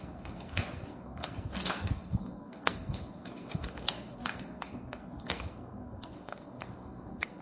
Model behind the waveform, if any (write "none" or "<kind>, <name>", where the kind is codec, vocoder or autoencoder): codec, SNAC